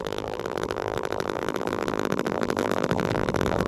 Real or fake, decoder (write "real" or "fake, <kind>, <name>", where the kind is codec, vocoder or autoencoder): fake, vocoder, BigVGAN v2